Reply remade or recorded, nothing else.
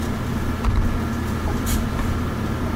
recorded